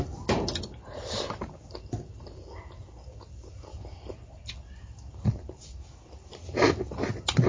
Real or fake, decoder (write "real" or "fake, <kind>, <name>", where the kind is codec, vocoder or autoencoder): real